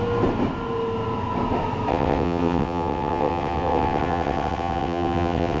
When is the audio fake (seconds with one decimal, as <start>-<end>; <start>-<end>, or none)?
1.9-5.6